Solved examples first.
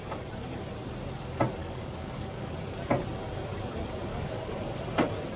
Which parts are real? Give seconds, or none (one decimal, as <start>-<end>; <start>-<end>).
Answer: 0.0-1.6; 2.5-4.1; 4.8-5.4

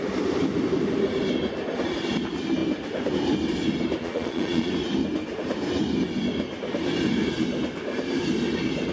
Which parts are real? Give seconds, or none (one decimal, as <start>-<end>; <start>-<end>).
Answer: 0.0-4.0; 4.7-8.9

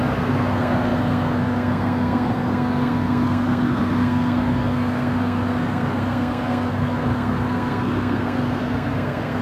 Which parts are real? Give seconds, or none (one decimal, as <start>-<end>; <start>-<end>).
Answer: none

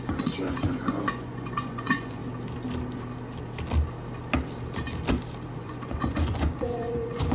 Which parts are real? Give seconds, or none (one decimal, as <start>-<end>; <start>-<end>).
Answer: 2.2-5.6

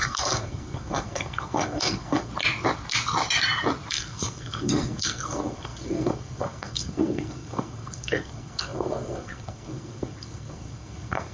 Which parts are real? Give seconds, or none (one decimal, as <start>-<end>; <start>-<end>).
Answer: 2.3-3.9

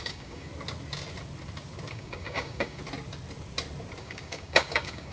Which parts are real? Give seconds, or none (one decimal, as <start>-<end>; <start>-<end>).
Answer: 0.5-1.9; 2.8-4.0